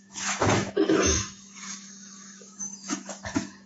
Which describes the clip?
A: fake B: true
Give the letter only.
A